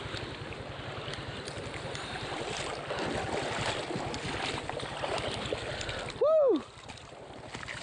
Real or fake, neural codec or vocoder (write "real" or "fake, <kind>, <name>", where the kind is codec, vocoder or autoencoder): real